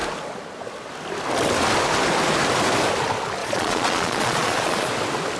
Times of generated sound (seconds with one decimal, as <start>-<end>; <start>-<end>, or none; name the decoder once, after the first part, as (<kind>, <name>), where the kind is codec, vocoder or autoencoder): 3.4-4.9 (vocoder, Vocos)